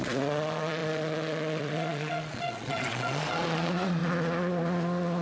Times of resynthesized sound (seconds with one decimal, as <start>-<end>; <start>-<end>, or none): 0.0-4.0